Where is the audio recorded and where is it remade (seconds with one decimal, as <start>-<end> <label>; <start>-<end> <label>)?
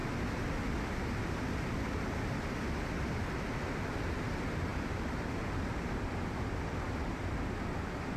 0.0-4.7 recorded; 4.7-5.3 remade; 5.3-8.2 recorded